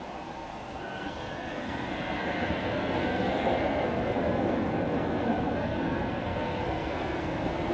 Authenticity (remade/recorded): remade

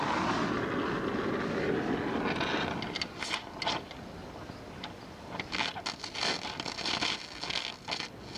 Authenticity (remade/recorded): recorded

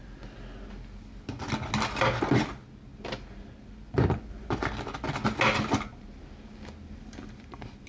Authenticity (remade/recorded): recorded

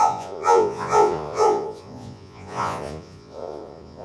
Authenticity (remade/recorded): remade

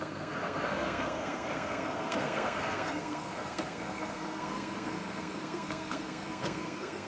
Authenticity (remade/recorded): remade